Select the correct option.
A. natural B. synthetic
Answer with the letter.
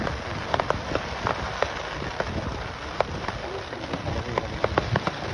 B